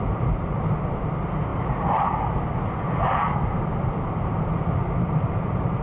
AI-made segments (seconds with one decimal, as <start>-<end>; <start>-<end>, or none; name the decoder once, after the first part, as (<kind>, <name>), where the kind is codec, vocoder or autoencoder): none